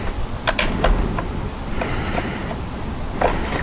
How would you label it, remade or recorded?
recorded